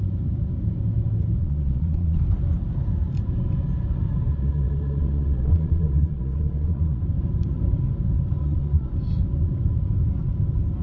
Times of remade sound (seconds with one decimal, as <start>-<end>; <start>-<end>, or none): 1.4-2.2; 4.3-7.0; 8.4-8.9